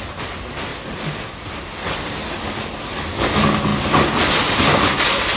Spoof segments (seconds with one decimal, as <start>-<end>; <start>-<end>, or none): none